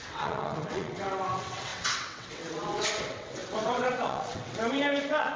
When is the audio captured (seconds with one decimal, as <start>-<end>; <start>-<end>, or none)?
none